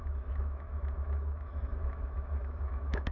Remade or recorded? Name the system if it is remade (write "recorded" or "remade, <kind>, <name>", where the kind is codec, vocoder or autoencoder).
remade, autoencoder, DAC-VAE